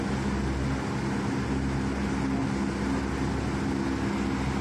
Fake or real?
real